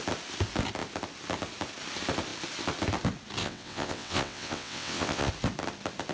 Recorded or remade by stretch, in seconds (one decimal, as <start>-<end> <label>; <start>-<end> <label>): 0.0-3.4 recorded; 3.4-5.3 remade; 5.3-6.1 recorded